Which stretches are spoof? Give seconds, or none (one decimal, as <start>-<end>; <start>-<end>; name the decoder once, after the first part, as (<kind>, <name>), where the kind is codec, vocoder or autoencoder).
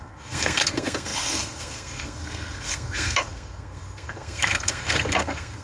0.0-5.6 (codec, SNAC)